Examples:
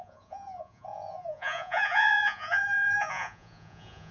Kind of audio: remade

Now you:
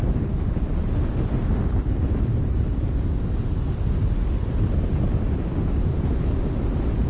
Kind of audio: recorded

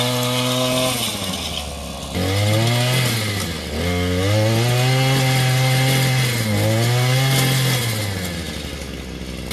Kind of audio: recorded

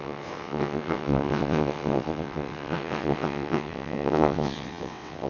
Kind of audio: remade